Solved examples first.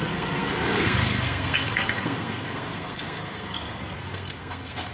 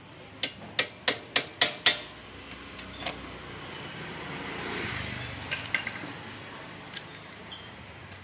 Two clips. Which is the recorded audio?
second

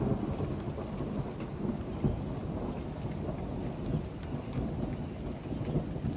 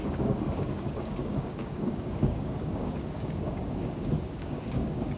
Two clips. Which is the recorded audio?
first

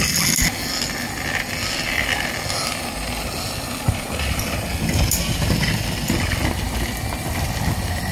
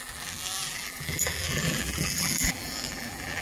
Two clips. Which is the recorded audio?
first